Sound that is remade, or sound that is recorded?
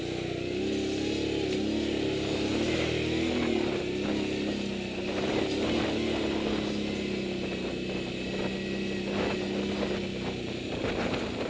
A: recorded